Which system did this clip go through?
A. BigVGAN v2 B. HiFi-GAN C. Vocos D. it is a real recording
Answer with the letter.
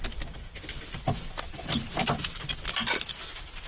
D